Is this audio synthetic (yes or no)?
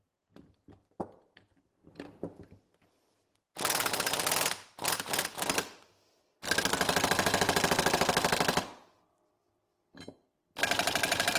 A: no